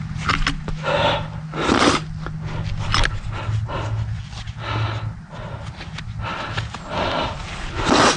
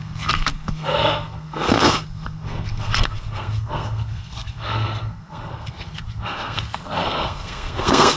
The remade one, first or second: second